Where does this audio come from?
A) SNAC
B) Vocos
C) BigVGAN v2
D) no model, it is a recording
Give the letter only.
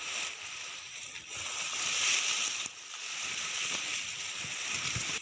D